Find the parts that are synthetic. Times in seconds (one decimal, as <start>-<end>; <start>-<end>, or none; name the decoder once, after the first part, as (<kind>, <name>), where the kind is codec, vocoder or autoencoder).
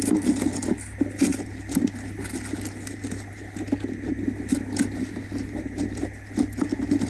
none